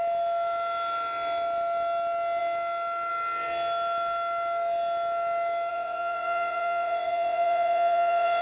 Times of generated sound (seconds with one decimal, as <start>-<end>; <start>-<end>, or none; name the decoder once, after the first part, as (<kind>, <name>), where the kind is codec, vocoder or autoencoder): 5.7-8.4 (vocoder, WaveNeXt)